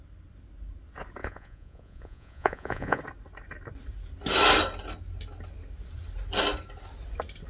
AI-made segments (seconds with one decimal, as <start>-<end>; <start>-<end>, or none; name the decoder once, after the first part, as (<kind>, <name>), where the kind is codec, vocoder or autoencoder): 1.2-3.0 (vocoder, Vocos)